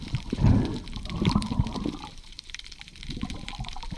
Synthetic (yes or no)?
yes